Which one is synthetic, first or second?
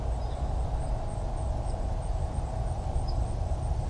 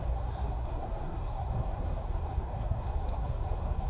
second